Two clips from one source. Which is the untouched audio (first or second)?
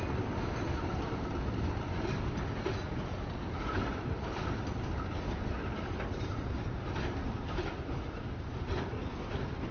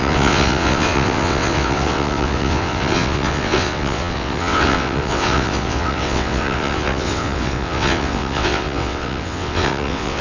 first